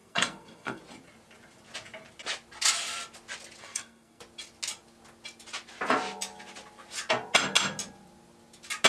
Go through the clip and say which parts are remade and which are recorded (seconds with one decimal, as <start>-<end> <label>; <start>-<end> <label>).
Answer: 0.0-0.8 remade; 0.8-3.6 recorded; 3.6-4.2 remade; 4.2-8.9 recorded